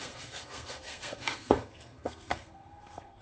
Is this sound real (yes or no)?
no